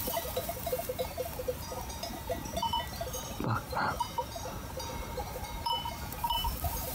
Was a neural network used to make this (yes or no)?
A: yes